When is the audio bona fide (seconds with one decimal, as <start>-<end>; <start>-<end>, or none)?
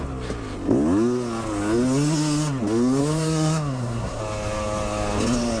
0.0-3.0; 4.2-5.6